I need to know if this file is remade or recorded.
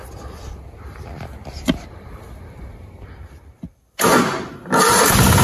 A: remade